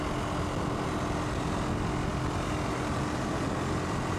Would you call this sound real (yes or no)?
yes